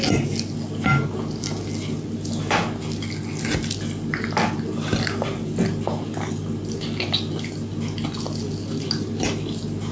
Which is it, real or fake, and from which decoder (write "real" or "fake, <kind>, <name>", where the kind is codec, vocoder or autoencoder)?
real